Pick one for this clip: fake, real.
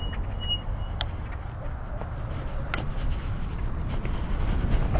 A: real